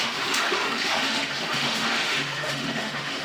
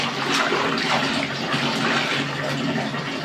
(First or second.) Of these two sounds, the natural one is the second